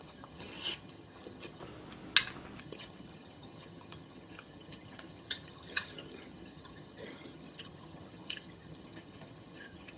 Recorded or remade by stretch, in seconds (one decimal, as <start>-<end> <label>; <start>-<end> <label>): 0.0-1.6 remade; 1.6-2.6 recorded; 2.6-10.0 remade

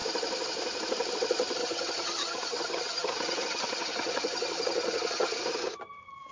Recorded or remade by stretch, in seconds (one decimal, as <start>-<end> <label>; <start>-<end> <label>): 0.0-1.6 recorded; 1.6-5.4 remade; 5.4-6.3 recorded